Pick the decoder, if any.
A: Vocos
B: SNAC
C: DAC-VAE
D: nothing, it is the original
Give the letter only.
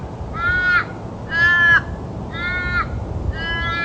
D